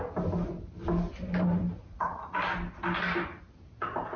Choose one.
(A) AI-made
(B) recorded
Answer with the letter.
B